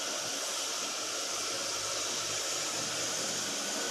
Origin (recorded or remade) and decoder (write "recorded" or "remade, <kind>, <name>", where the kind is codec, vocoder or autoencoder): recorded